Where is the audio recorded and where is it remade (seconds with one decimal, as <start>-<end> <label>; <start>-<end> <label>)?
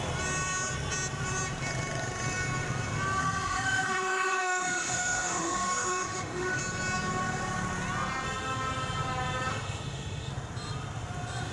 0.0-3.2 recorded; 3.2-6.6 remade; 6.6-9.5 recorded; 9.5-10.3 remade; 10.3-11.5 recorded